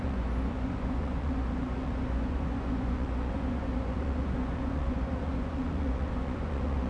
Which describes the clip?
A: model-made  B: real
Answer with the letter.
A